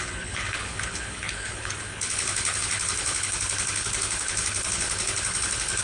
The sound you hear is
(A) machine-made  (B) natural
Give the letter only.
A